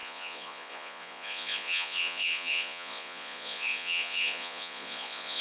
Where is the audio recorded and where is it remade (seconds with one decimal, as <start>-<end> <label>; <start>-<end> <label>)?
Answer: 0.0-5.4 remade

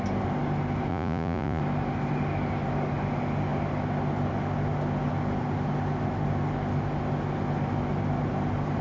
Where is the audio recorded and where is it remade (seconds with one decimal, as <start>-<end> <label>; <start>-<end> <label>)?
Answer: 0.0-0.9 recorded; 0.9-1.6 remade; 1.6-8.8 recorded

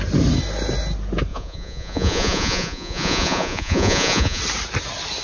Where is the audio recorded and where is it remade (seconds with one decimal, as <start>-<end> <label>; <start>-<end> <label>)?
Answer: 0.0-1.3 recorded; 1.3-4.4 remade; 4.4-5.2 recorded

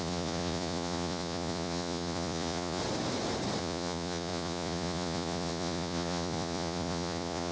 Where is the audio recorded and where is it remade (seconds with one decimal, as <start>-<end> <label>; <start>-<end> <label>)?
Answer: 0.0-2.8 remade; 2.8-3.6 recorded; 3.6-7.5 remade

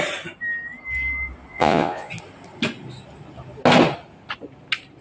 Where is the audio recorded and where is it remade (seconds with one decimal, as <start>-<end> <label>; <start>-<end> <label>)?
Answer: 0.0-1.5 recorded; 1.5-2.1 remade; 2.1-5.0 recorded

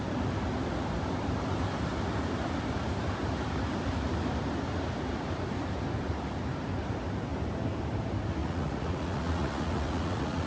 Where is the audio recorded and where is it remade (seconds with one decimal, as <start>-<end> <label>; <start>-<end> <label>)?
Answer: 0.0-8.4 recorded; 8.4-10.5 remade

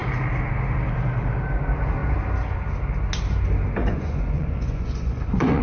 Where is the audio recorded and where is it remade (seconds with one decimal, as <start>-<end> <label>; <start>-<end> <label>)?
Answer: 0.0-3.8 recorded; 3.8-5.6 remade